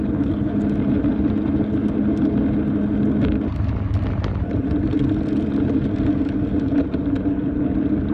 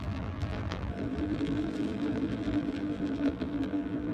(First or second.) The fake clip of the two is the second